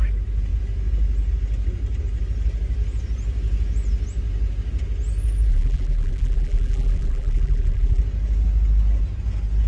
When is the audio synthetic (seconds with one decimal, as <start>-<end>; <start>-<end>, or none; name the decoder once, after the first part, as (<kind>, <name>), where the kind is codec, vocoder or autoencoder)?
5.5-8.0 (vocoder, BigVGAN v2)